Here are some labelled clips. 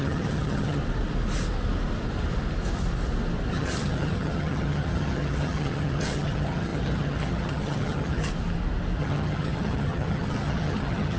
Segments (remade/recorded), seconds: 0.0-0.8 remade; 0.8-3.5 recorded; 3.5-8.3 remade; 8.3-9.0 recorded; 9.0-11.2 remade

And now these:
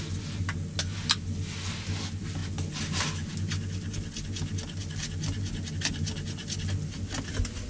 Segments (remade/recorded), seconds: 0.0-7.7 recorded

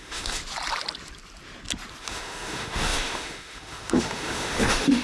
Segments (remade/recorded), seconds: 0.0-0.4 remade; 0.4-2.0 recorded; 2.0-5.0 remade

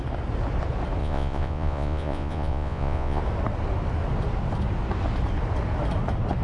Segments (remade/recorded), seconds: 0.0-1.0 recorded; 1.0-3.2 remade; 3.2-6.4 recorded